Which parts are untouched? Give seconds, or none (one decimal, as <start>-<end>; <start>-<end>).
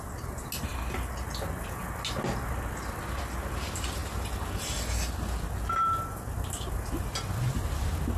0.0-8.2